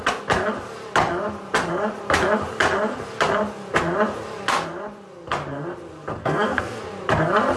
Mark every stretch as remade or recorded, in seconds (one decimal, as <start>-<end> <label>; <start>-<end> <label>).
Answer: 0.0-6.2 recorded; 6.2-6.8 remade; 6.8-7.6 recorded